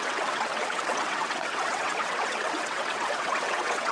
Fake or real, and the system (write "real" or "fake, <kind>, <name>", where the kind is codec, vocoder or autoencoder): fake, vocoder, WaveNeXt